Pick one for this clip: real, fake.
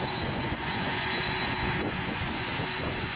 fake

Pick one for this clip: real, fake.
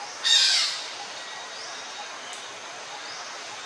real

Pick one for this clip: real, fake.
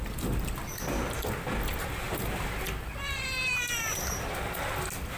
real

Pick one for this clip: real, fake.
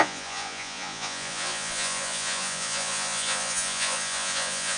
fake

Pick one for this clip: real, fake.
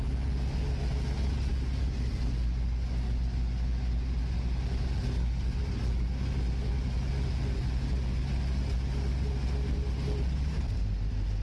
real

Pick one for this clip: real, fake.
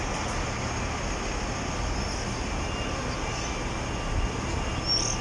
real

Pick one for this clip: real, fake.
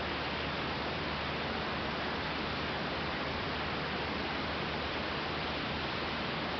real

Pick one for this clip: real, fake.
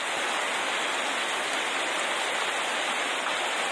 real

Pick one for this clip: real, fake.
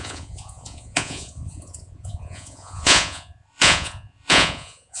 fake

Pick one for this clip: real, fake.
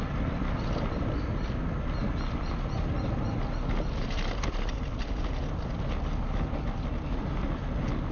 real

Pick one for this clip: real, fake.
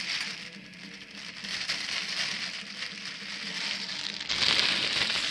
real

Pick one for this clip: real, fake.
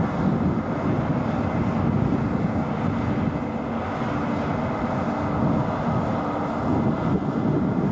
real